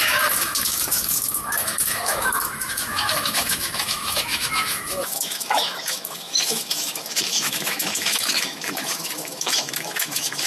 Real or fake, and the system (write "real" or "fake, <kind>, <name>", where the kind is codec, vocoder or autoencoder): fake, autoencoder, DAC-VAE